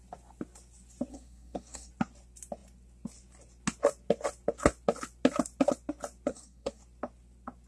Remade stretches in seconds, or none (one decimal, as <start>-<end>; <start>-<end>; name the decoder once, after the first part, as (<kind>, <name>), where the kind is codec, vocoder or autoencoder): 1.1-1.9 (codec, SNAC); 6.3-6.8